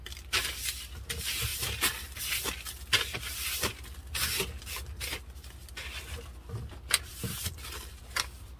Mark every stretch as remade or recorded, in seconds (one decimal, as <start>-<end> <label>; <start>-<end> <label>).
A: 0.0-7.1 recorded; 7.1-8.6 remade